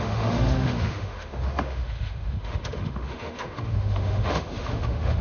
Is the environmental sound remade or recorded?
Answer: remade